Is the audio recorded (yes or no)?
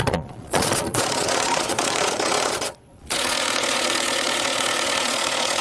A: no